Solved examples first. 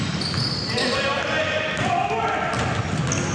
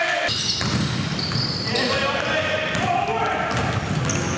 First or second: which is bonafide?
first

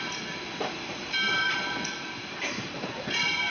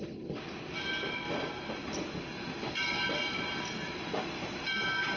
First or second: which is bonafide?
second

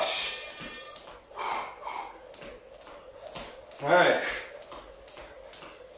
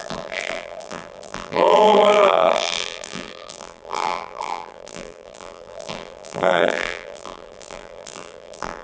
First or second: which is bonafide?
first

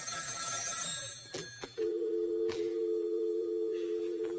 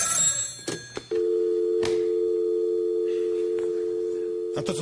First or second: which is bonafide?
second